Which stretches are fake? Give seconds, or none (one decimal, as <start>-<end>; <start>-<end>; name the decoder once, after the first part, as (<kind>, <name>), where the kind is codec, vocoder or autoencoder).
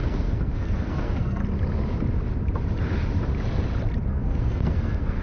0.0-1.4 (codec, SNAC); 4.1-5.2